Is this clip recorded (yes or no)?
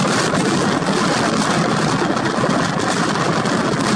yes